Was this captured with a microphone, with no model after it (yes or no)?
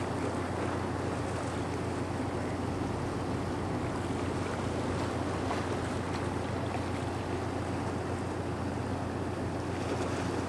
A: yes